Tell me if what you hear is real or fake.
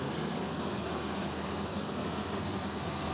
fake